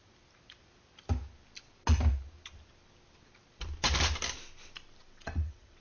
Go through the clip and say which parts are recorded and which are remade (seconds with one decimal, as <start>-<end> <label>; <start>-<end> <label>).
0.0-5.0 recorded; 5.0-5.8 remade